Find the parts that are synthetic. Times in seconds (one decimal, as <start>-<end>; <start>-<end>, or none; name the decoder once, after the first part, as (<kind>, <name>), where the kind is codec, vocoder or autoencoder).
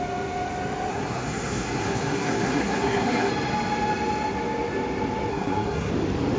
0.9-3.3 (codec, SNAC); 5.3-5.9